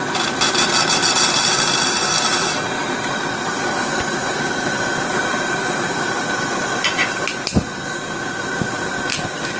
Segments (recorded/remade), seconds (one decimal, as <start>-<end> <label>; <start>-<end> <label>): 0.0-2.8 recorded; 2.8-6.0 remade; 6.0-9.6 recorded